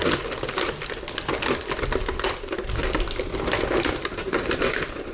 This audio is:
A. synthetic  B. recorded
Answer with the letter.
B